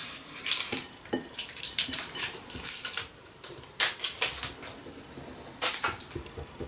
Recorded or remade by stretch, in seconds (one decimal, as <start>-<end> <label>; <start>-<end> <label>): 0.0-4.0 remade; 4.0-6.7 recorded